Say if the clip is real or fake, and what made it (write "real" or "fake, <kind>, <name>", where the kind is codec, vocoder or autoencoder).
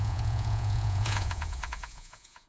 fake, vocoder, Vocos